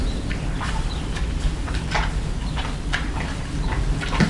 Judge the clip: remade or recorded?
remade